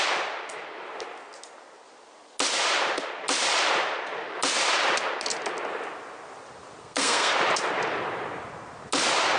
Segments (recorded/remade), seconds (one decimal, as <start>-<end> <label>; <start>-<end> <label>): 0.0-6.8 recorded; 6.8-7.3 remade; 7.3-9.4 recorded